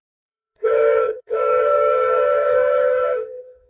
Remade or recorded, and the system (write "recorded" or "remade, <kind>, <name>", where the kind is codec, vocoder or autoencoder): remade, codec, DAC